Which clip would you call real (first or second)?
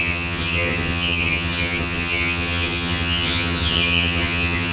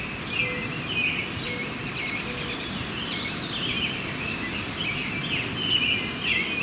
second